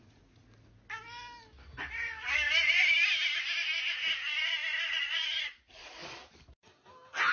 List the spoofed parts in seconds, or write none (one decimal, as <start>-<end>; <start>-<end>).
0.0-0.4; 4.8-6.0